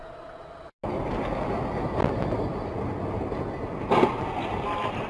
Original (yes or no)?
yes